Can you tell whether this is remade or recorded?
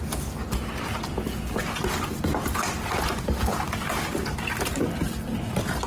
recorded